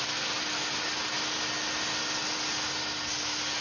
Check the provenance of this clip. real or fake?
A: real